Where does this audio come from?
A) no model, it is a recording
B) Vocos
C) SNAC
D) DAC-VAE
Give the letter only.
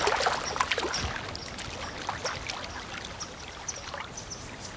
A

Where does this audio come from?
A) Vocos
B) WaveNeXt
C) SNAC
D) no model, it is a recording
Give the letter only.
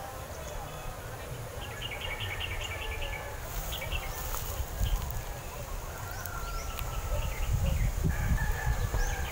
D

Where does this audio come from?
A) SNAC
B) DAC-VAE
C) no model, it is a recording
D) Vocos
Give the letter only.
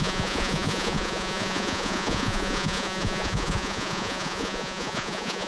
D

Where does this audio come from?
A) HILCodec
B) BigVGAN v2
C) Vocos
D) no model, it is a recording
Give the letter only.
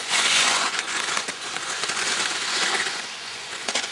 C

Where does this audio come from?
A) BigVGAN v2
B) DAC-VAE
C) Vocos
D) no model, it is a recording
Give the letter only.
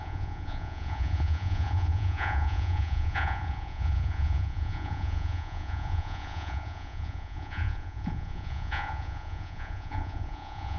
C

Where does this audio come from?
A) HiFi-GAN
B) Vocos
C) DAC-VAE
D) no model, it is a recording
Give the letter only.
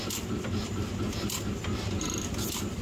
D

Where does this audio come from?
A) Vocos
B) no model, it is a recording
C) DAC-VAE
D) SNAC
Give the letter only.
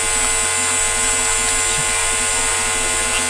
B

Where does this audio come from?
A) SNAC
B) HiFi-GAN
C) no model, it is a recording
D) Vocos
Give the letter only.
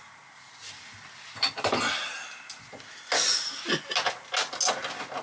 C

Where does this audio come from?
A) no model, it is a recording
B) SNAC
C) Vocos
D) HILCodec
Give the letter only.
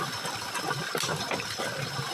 A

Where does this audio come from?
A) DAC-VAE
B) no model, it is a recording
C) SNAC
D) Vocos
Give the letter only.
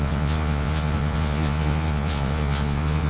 D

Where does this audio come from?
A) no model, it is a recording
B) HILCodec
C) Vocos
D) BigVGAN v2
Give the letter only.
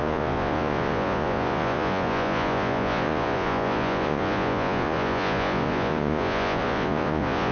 C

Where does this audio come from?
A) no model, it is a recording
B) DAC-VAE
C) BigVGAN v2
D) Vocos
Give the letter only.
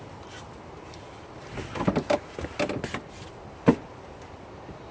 A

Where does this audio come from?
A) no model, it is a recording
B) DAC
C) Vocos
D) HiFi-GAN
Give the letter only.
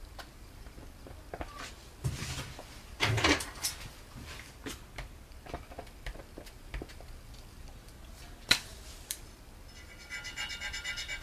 A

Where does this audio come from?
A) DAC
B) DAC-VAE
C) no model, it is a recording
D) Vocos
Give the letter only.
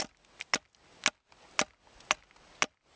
C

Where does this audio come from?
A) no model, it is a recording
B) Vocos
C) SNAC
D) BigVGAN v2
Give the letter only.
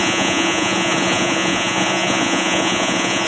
B